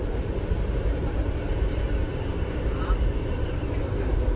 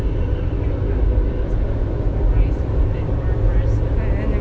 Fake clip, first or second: first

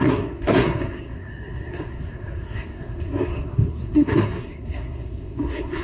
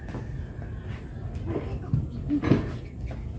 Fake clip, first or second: first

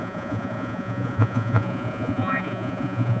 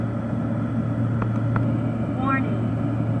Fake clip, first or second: first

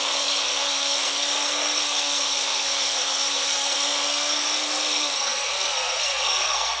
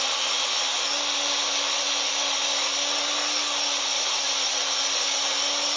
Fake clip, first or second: first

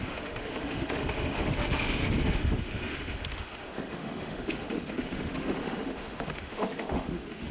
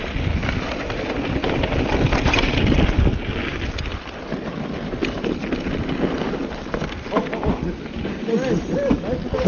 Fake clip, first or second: first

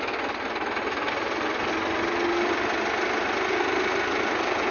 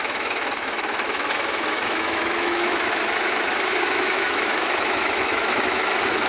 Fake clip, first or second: second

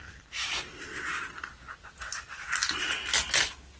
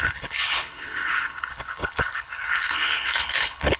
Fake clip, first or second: second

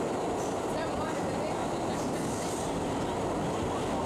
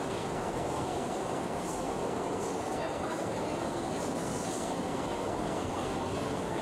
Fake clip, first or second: second